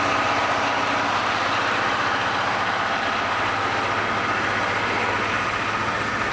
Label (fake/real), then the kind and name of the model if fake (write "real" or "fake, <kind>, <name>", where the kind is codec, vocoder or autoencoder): real